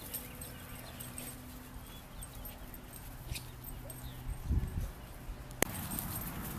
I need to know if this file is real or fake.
real